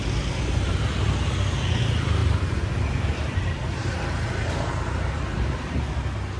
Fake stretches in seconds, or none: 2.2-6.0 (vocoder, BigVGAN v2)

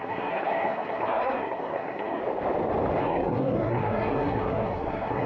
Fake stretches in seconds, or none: 0.0-2.2 (codec, SNAC); 3.0-5.3

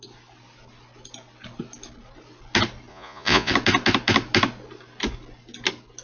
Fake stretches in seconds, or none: 2.9-3.5 (vocoder, Vocos)

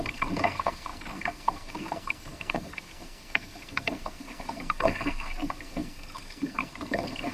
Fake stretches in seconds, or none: 0.0-7.3 (codec, SNAC)

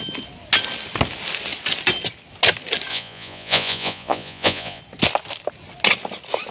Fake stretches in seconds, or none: 2.9-4.8 (vocoder, Vocos)

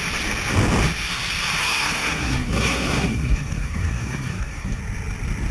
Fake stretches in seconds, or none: 1.6-4.8 (codec, SNAC)